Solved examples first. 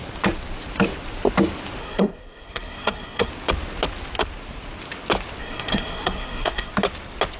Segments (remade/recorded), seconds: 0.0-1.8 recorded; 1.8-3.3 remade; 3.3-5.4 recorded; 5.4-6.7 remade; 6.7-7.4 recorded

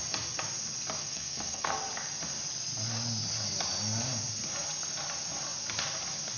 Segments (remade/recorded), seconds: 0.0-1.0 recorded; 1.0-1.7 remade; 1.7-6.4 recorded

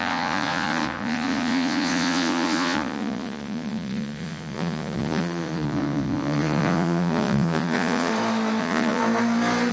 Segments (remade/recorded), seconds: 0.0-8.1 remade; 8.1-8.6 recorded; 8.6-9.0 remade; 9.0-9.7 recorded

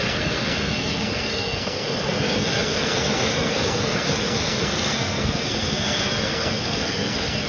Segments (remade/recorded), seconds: 0.0-7.5 remade